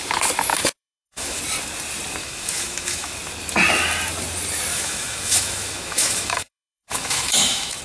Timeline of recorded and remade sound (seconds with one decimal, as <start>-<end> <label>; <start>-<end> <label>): 0.0-0.5 recorded; 0.5-1.4 remade; 1.4-2.2 recorded; 2.2-3.1 remade; 3.1-4.7 recorded; 4.7-7.8 remade